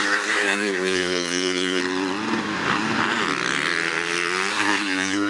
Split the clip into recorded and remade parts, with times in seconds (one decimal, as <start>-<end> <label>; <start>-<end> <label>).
0.0-1.8 remade; 1.8-4.5 recorded; 4.5-5.3 remade